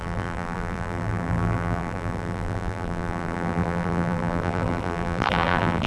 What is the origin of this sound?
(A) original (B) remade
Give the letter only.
B